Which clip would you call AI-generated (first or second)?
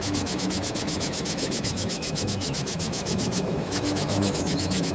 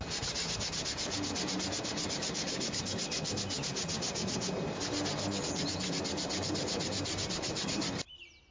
first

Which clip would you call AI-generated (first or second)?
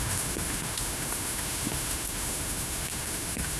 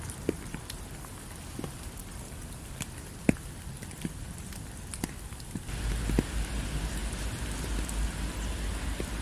first